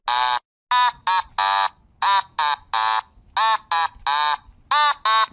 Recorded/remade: recorded